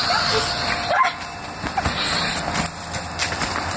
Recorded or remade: recorded